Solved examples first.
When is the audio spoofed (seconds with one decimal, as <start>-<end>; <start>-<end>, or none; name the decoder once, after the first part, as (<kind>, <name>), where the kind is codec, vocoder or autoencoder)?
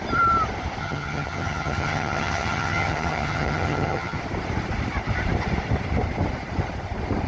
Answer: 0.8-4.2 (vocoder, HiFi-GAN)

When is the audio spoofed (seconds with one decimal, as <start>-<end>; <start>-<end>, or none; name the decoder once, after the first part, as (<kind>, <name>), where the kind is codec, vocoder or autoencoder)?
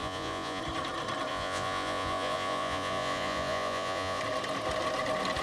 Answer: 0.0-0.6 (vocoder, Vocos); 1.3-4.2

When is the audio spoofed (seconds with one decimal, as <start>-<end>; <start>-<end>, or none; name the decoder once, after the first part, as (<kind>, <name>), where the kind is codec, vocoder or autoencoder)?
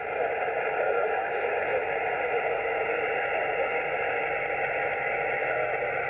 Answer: none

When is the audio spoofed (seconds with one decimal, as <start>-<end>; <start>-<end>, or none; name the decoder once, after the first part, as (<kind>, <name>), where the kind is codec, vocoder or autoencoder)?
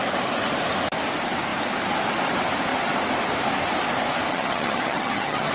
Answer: 4.3-5.5 (vocoder, HiFi-GAN)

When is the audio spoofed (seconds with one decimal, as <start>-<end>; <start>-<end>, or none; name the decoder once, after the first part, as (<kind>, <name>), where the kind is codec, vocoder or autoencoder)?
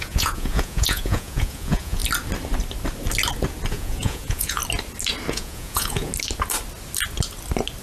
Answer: 0.0-2.0 (vocoder, Vocos); 3.7-4.6; 5.3-6.1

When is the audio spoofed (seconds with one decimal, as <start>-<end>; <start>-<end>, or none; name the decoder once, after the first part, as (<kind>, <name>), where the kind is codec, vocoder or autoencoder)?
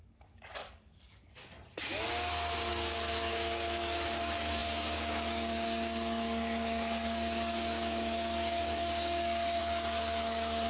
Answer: 0.0-1.5 (codec, DAC); 2.7-10.7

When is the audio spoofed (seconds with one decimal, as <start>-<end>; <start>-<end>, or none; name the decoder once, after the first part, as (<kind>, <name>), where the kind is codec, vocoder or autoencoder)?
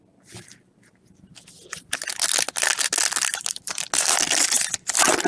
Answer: none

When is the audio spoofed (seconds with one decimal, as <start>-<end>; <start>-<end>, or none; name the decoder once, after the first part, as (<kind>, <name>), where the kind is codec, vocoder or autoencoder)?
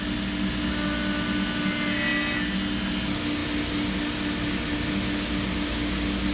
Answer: none